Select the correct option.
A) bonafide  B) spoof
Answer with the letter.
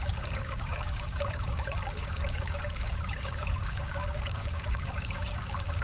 B